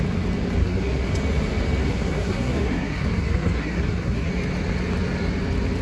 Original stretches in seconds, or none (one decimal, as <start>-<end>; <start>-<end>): 0.0-0.6; 1.1-1.8; 4.3-5.8